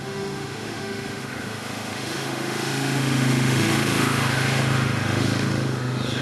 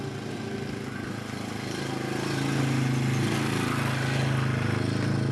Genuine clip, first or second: second